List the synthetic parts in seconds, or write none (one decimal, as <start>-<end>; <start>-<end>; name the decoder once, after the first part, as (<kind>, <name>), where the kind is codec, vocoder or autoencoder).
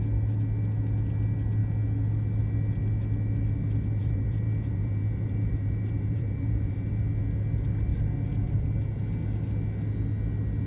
4.0-6.9 (vocoder, BigVGAN v2)